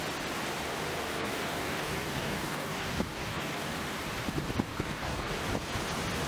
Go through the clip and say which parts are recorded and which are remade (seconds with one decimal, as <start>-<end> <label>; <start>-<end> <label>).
0.0-1.1 recorded; 1.1-3.7 remade; 3.7-4.7 recorded; 4.7-5.4 remade; 5.4-6.3 recorded

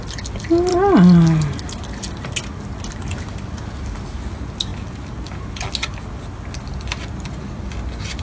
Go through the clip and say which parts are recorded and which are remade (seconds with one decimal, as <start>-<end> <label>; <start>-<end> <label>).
0.0-8.2 recorded